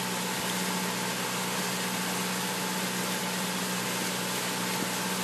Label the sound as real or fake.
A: real